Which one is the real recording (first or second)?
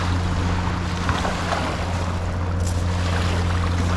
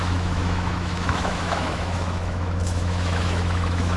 first